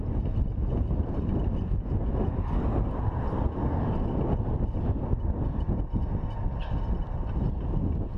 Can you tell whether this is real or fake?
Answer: real